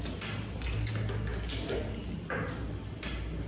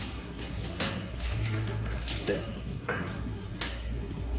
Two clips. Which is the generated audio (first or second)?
second